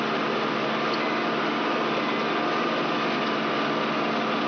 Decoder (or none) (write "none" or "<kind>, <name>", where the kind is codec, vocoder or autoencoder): none